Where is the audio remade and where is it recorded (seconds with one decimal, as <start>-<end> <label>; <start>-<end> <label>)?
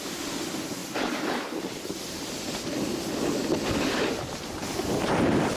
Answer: 0.0-5.6 recorded